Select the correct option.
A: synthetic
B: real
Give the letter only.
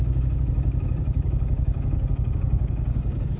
A